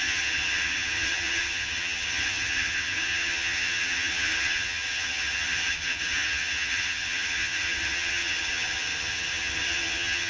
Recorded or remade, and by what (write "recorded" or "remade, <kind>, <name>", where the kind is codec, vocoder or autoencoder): remade, vocoder, HiFi-GAN